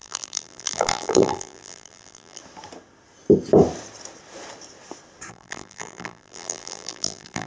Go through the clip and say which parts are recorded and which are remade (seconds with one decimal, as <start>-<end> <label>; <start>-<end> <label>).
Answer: 0.0-2.4 remade; 2.4-5.3 recorded; 5.3-7.5 remade